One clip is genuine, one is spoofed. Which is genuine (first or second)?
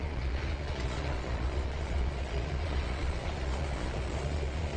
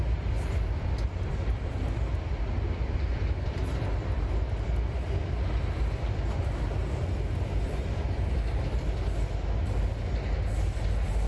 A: second